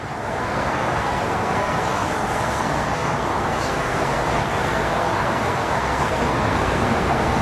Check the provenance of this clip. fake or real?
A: fake